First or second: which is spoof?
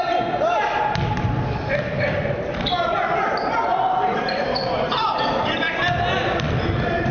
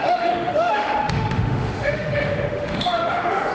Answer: second